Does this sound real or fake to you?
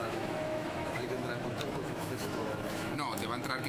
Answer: fake